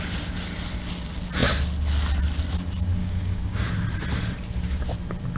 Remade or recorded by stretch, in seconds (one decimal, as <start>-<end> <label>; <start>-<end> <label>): 0.0-3.0 recorded; 3.0-3.7 remade; 3.7-5.4 recorded